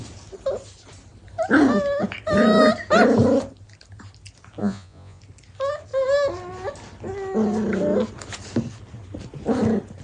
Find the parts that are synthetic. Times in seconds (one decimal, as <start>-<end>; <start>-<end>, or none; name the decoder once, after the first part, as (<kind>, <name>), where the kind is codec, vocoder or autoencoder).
4.6-5.2 (vocoder, Vocos)